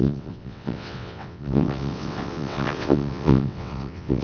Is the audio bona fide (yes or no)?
no